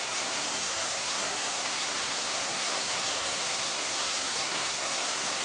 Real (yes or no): no